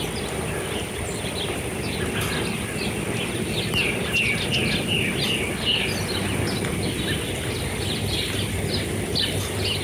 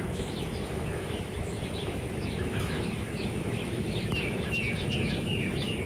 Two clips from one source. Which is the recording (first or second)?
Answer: first